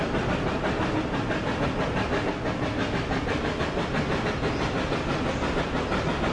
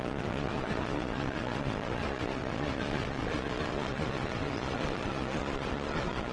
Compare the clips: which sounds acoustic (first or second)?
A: first